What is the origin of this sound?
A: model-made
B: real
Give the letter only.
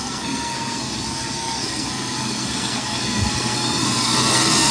A